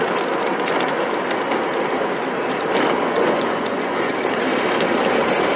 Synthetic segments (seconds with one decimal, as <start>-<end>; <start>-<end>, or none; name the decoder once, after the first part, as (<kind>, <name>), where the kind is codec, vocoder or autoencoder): 3.0-4.1 (vocoder, Vocos)